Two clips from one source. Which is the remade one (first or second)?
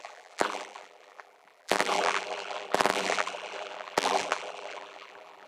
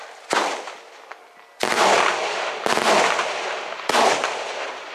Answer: first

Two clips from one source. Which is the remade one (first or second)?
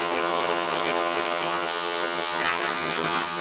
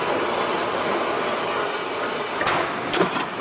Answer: first